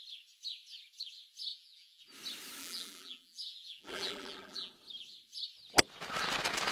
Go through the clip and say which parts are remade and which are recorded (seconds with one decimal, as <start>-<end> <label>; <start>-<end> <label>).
0.0-1.5 recorded; 1.5-2.0 remade; 2.0-2.6 recorded; 2.6-4.7 remade; 4.7-6.7 recorded